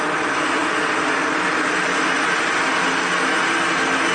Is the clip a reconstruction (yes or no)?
no